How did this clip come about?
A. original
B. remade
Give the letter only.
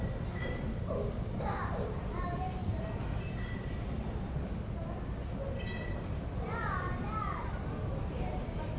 A